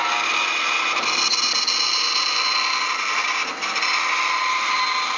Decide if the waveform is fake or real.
real